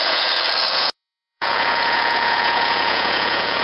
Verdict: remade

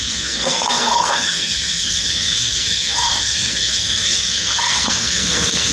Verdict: remade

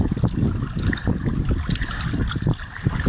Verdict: recorded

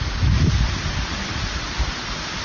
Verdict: recorded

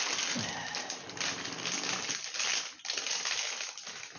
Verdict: recorded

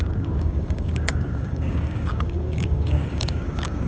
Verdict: remade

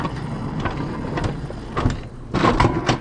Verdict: recorded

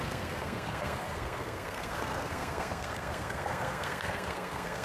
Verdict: remade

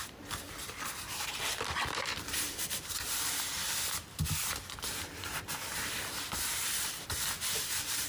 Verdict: remade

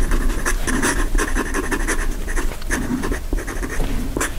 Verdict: recorded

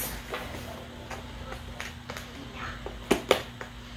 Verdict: recorded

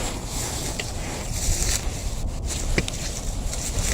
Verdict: recorded